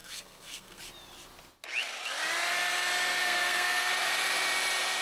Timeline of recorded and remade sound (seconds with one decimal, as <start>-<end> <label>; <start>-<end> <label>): 0.0-0.8 remade; 0.8-3.2 recorded; 3.2-3.9 remade; 3.9-5.0 recorded